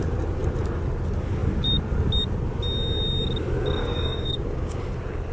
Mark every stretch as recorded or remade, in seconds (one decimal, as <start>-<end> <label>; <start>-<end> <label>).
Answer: 0.0-3.8 recorded; 3.8-4.8 remade; 4.8-5.3 recorded